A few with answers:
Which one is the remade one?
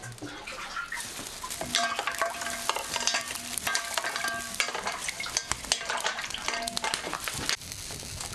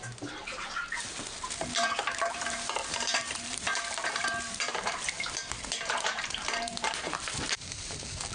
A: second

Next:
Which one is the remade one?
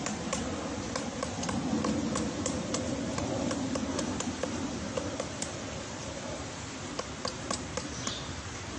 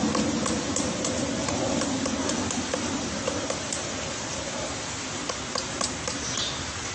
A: first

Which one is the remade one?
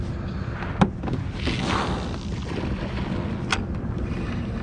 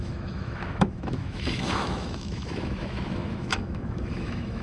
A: second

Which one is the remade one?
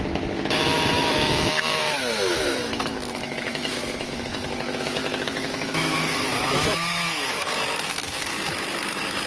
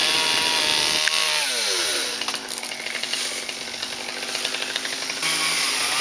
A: first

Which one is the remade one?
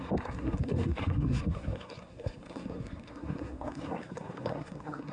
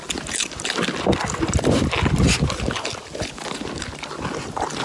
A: first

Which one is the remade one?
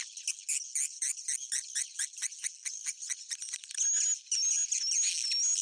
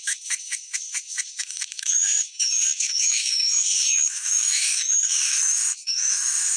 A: second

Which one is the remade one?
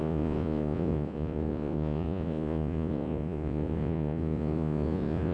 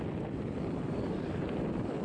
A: first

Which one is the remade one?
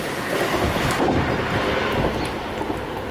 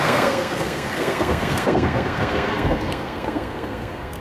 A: second